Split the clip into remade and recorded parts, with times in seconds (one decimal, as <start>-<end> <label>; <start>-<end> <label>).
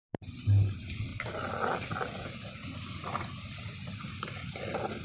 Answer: 0.0-5.0 recorded